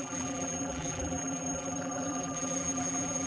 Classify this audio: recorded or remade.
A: remade